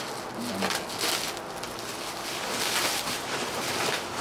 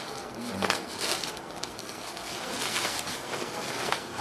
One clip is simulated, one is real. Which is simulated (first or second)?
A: second